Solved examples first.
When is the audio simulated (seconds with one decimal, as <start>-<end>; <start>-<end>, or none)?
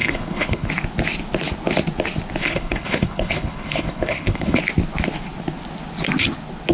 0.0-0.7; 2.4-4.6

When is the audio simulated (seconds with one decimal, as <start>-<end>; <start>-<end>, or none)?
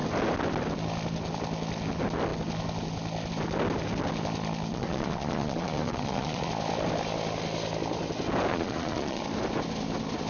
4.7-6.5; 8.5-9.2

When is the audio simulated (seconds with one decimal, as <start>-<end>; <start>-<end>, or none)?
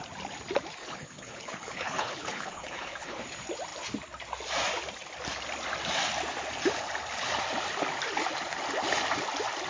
0.8-3.2